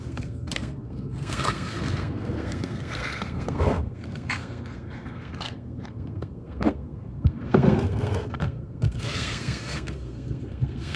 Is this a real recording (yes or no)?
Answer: no